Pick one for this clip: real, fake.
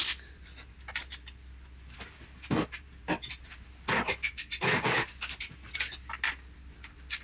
real